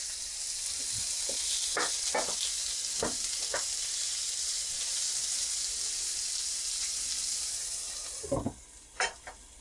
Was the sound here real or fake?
real